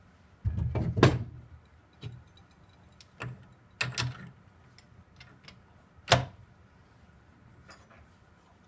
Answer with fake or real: real